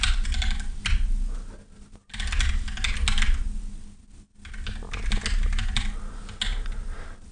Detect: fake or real real